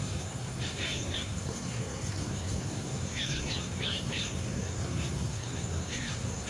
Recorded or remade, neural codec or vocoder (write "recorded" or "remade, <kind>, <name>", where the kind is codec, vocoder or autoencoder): remade, codec, SNAC